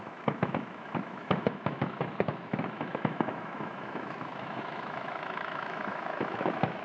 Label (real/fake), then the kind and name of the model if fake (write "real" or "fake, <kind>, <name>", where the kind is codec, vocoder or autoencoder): fake, autoencoder, DAC-VAE